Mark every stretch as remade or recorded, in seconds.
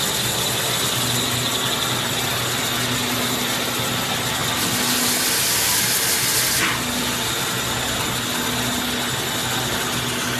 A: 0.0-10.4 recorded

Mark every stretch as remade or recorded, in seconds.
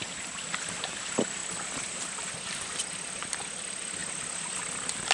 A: 0.0-5.1 recorded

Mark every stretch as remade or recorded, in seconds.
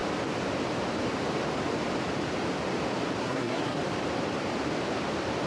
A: 0.0-3.2 recorded; 3.2-3.8 remade; 3.8-5.5 recorded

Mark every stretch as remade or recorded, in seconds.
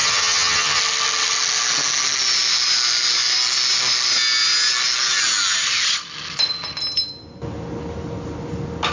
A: 0.0-0.8 remade; 0.8-8.9 recorded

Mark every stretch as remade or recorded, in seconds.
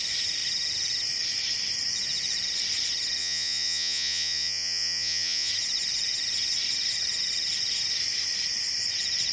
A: 0.0-3.2 recorded; 3.2-5.5 remade; 5.5-9.3 recorded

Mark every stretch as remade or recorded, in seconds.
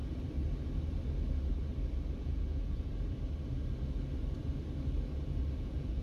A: 0.0-2.2 recorded; 2.2-2.9 remade; 2.9-5.6 recorded; 5.6-6.0 remade